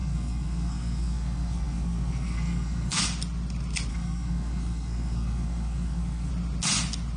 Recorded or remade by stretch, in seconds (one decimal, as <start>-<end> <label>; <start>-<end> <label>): 0.0-3.0 remade; 3.0-3.9 recorded; 3.9-6.3 remade; 6.3-7.2 recorded